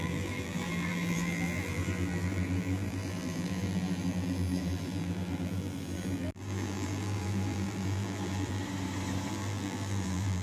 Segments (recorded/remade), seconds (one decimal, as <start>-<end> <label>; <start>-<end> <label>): 0.0-8.6 remade; 8.6-9.3 recorded; 9.3-10.4 remade